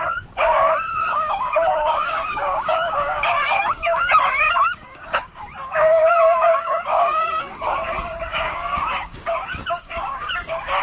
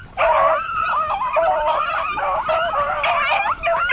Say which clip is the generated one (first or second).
first